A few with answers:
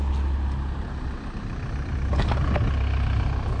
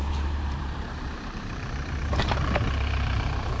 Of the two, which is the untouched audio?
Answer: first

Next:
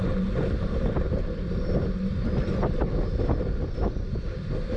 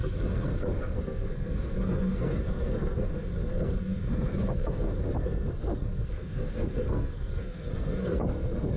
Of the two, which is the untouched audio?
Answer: first